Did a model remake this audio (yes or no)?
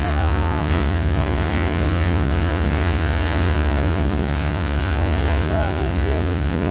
yes